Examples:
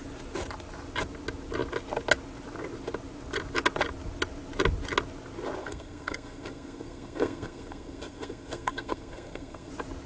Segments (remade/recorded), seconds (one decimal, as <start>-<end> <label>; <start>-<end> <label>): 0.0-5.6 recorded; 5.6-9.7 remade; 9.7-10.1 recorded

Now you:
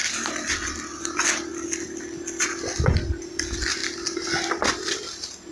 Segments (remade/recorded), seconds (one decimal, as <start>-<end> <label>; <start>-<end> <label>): 0.0-5.5 recorded

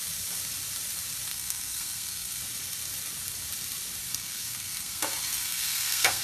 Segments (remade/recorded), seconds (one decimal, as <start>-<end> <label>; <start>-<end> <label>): 0.0-1.3 recorded; 1.3-2.4 remade; 2.4-4.0 recorded; 4.0-6.2 remade

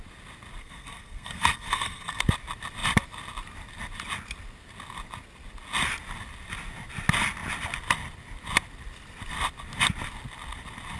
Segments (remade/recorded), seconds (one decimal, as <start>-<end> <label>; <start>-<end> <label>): 0.0-0.6 recorded; 0.6-2.2 remade; 2.2-11.0 recorded

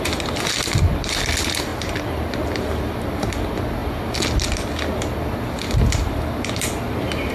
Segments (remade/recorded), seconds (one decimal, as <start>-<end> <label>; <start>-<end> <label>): 0.0-1.7 recorded; 1.7-2.8 remade; 2.8-7.3 recorded

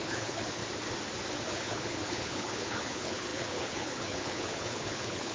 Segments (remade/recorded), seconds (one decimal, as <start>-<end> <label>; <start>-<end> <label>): 0.0-0.6 remade; 0.6-1.5 recorded; 1.5-5.3 remade

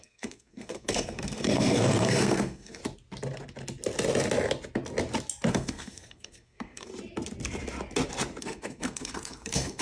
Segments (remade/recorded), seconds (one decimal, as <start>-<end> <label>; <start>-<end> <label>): 0.0-2.8 remade; 2.8-5.5 recorded; 5.5-6.9 remade; 6.9-8.4 recorded; 8.4-9.8 remade